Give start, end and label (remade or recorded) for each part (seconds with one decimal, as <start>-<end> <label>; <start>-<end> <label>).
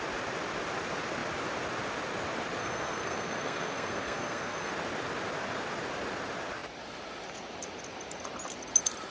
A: 0.0-2.6 recorded; 2.6-4.7 remade; 4.7-9.1 recorded